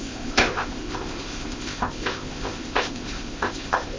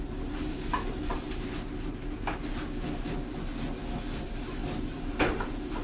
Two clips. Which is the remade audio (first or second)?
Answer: first